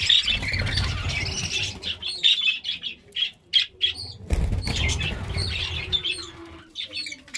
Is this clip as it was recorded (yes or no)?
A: yes